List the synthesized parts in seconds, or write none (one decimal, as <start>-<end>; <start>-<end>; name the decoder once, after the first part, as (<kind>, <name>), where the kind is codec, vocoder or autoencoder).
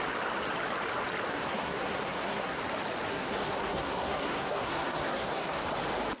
1.3-2.6 (codec, SNAC); 3.1-5.6